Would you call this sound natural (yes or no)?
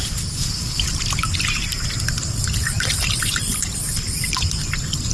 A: yes